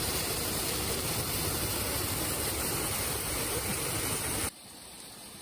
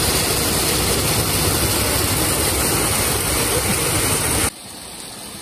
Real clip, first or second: second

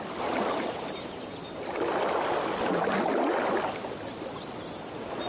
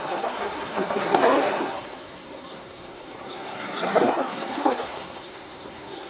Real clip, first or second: first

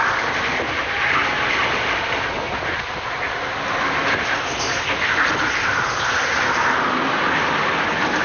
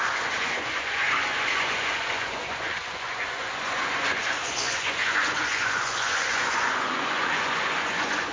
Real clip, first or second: first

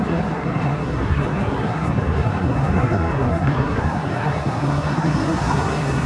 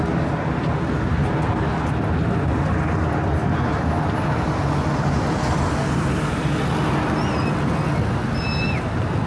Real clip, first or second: second